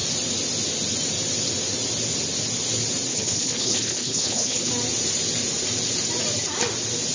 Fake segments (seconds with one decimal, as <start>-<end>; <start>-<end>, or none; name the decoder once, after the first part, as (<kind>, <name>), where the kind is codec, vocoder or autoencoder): 3.1-4.7 (codec, HILCodec)